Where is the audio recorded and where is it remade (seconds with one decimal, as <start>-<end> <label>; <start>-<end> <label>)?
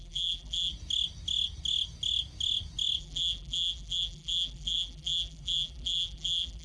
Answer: 0.0-0.7 remade; 0.7-3.0 recorded; 3.0-6.6 remade